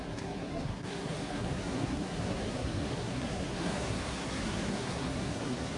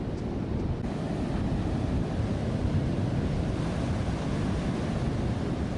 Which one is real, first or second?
second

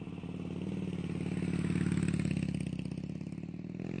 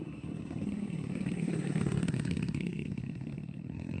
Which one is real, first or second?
first